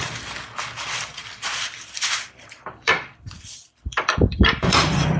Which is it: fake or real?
fake